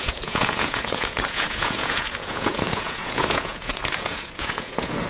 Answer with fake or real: fake